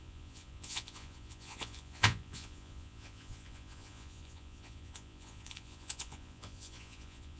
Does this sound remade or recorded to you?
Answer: remade